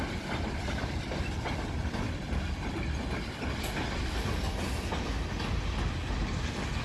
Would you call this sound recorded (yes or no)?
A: yes